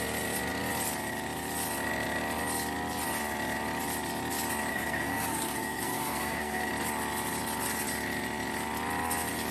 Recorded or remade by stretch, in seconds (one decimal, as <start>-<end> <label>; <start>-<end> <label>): 0.0-4.7 recorded; 4.7-6.7 remade; 6.7-9.5 recorded